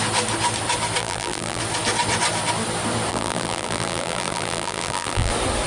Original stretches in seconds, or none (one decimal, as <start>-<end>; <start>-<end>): 0.0-1.0; 1.6-3.1; 5.3-5.7

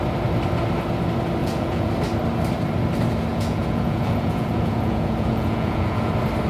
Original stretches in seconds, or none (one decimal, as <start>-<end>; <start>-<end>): 0.0-1.4; 1.9-3.3; 6.1-6.5

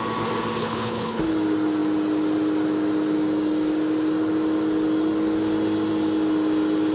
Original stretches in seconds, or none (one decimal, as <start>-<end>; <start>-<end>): 0.0-0.6; 1.2-6.9

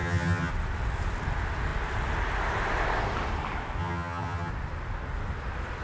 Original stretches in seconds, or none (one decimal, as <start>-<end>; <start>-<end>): 0.5-3.8; 4.5-5.8

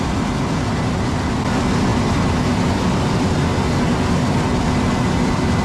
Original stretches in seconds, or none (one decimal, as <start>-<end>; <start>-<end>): 0.0-5.6

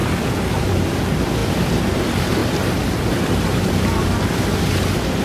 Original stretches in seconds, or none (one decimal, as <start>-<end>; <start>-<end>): 0.7-2.4; 3.3-5.2

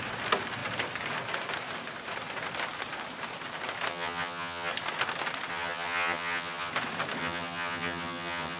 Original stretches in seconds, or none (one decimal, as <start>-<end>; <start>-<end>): 0.0-3.9; 4.7-5.5; 6.7-7.2

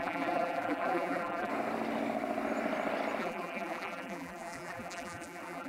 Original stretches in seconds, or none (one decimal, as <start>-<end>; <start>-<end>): 1.5-3.2